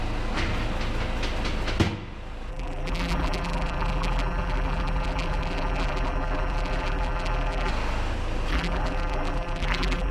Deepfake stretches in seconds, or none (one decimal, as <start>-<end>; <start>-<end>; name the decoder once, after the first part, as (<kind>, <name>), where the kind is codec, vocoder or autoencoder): 2.5-7.7 (vocoder, BigVGAN v2); 8.5-10.1